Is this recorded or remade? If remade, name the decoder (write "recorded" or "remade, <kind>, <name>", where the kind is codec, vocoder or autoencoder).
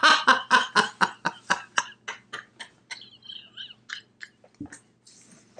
recorded